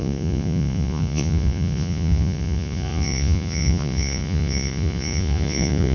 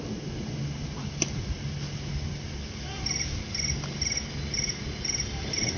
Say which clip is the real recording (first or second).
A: second